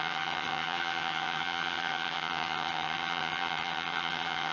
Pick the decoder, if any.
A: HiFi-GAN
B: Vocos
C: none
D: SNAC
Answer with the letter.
A